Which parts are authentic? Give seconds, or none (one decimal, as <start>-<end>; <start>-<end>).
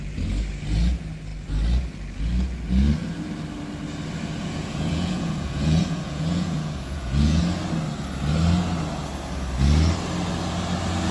0.0-4.4; 7.4-11.1